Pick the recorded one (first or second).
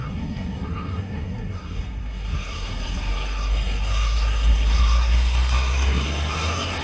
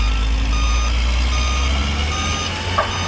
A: second